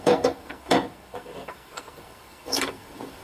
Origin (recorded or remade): remade